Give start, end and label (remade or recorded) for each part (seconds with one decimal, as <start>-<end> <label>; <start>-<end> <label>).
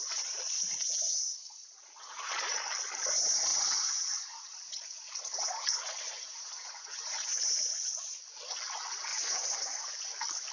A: 0.0-2.3 remade; 2.3-3.5 recorded; 3.5-7.4 remade; 7.4-9.1 recorded; 9.1-10.0 remade; 10.0-10.5 recorded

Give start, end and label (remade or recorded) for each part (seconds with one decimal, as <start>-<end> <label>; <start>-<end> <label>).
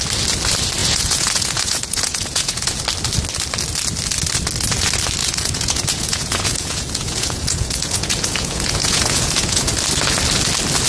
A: 0.0-0.8 recorded; 0.8-2.8 remade; 2.8-5.2 recorded; 5.2-9.7 remade; 9.7-10.9 recorded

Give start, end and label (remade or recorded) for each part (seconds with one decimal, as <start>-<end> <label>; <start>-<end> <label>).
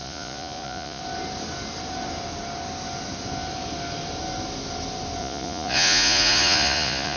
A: 0.0-1.0 remade; 1.0-5.2 recorded; 5.2-7.2 remade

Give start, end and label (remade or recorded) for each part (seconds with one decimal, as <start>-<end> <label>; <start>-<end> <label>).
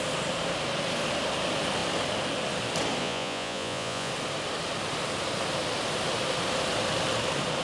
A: 0.0-3.0 recorded; 3.0-4.1 remade; 4.1-7.6 recorded